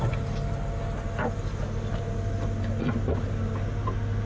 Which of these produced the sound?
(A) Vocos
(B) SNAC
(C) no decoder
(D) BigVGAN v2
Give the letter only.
C